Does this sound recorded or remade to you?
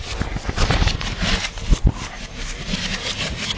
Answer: remade